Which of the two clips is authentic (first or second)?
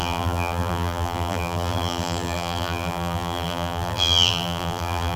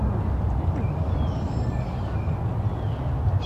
second